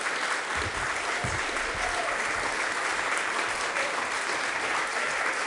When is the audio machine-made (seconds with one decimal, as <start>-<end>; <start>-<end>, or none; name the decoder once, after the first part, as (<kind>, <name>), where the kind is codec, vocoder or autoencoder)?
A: none